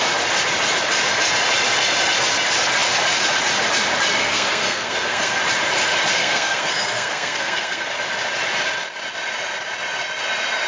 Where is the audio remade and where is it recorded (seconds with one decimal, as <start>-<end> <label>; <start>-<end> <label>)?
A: 0.0-4.2 recorded; 4.2-5.4 remade; 5.4-6.1 recorded; 6.1-7.9 remade; 7.9-10.7 recorded